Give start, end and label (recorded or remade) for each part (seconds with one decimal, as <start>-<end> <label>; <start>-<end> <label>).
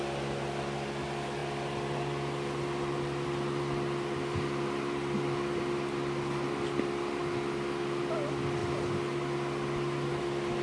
0.0-1.4 recorded; 1.4-5.6 remade; 5.6-10.6 recorded